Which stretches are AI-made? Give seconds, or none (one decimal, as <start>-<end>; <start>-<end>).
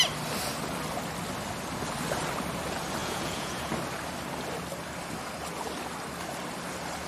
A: 3.0-3.7